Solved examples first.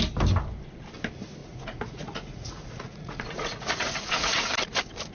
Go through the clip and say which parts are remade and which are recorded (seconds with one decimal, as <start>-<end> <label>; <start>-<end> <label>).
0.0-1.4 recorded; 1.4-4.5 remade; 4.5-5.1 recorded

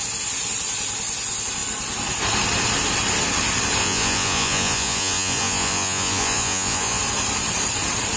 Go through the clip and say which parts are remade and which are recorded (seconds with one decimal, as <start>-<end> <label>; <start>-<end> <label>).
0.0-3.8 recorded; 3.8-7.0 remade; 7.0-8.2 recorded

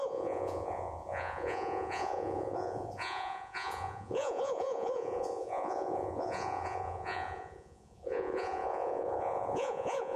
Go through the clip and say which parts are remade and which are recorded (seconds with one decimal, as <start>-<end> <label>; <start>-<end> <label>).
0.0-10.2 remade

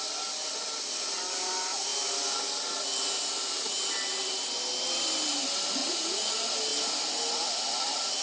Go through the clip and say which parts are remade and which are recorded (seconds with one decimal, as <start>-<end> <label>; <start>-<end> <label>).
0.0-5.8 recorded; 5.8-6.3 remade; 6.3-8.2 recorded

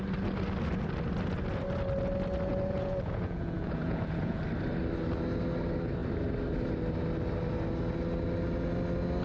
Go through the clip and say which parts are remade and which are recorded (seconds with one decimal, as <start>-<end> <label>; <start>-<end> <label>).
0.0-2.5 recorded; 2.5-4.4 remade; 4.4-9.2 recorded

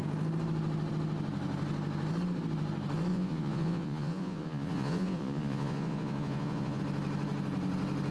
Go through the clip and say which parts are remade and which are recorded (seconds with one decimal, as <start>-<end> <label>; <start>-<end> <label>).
0.0-3.1 recorded; 3.1-6.8 remade; 6.8-8.1 recorded

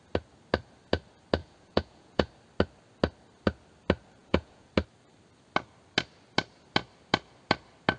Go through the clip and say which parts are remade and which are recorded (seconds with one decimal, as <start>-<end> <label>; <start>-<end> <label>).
0.0-1.4 recorded; 1.4-2.3 remade; 2.3-4.2 recorded; 4.2-4.7 remade; 4.7-8.0 recorded